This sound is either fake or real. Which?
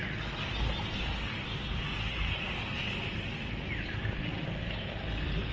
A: real